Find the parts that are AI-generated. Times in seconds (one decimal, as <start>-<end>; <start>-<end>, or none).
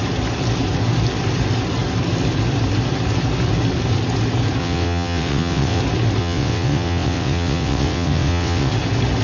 4.6-5.8; 6.2-8.7